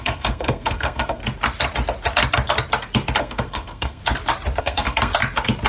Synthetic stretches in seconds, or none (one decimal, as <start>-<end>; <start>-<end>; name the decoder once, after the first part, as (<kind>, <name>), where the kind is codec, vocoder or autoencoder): 0.0-1.2 (codec, SNAC); 3.2-4.0; 4.6-5.1